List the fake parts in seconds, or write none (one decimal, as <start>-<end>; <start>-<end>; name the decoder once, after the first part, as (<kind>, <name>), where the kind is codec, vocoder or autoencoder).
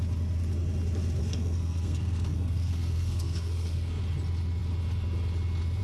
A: 1.2-4.0 (codec, SNAC)